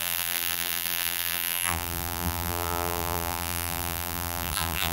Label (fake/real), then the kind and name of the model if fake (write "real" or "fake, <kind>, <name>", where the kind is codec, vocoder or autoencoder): fake, vocoder, BigVGAN v2